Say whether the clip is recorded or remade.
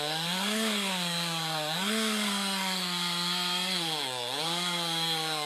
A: remade